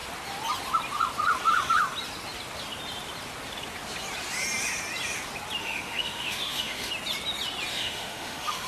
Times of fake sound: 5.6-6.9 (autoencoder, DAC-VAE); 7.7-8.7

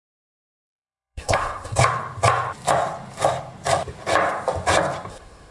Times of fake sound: 0.0-1.8 (codec, SNAC); 5.1-5.5

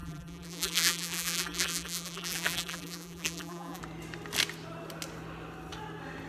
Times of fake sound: 0.0-3.8 (vocoder, BigVGAN v2)

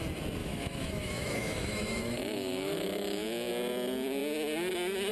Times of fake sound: 0.4-3.5 (autoencoder, DAC-VAE)

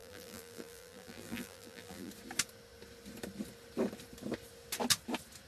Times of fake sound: 0.0-2.1 (vocoder, BigVGAN v2)

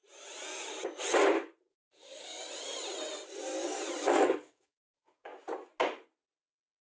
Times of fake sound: 1.7-2.4 (codec, DAC); 4.1-5.3

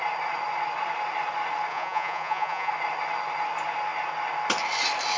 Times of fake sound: 1.7-2.7 (vocoder, Vocos)